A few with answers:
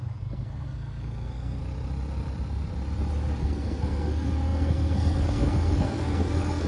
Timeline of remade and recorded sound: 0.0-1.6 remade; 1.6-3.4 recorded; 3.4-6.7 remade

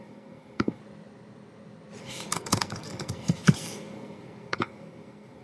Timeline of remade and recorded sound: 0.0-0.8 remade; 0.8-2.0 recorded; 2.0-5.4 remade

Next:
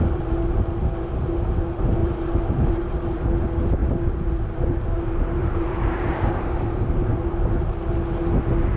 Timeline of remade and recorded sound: 0.0-2.0 recorded; 2.0-3.3 remade; 3.3-3.8 recorded; 3.8-6.3 remade; 6.3-8.8 recorded

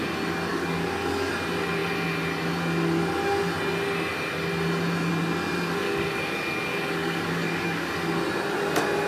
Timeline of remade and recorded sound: 0.0-0.5 recorded; 0.5-1.3 remade; 1.3-5.8 recorded; 5.8-7.9 remade; 7.9-9.1 recorded

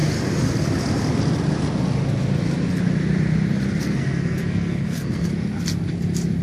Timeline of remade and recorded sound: 0.0-3.8 recorded; 3.8-5.3 remade; 5.3-6.4 recorded

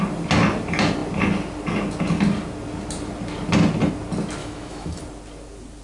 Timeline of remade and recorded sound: 0.0-4.4 recorded; 4.4-5.0 remade; 5.0-5.8 recorded

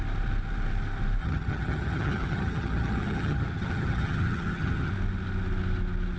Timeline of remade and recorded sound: 0.0-1.2 recorded; 1.2-4.9 remade; 4.9-6.2 recorded

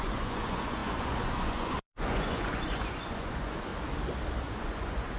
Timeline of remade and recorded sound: 0.0-3.7 remade; 3.7-4.4 recorded; 4.4-5.2 remade